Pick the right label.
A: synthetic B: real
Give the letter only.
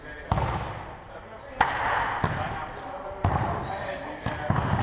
B